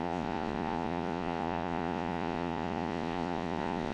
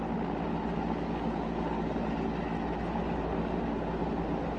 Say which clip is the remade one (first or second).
first